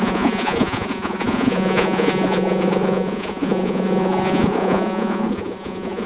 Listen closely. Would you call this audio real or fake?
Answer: fake